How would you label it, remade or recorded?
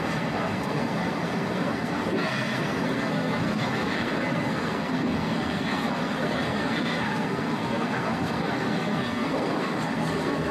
remade